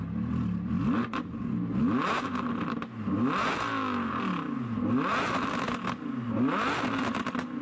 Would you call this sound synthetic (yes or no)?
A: no